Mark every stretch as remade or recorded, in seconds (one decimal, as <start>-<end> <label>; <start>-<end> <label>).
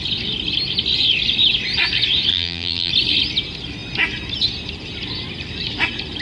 0.0-2.3 recorded; 2.3-2.9 remade; 2.9-6.2 recorded